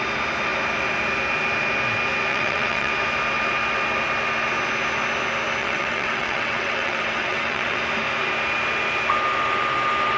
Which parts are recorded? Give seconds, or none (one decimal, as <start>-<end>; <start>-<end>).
0.0-2.3; 2.9-5.6; 7.8-10.2